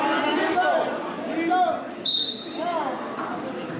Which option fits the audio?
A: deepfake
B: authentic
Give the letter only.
B